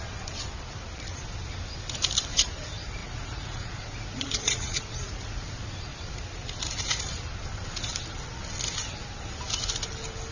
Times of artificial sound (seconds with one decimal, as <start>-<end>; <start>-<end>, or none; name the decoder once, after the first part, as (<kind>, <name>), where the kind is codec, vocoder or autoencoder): 3.0-5.8 (vocoder, Vocos)